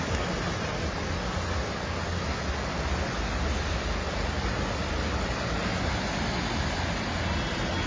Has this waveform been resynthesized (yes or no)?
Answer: no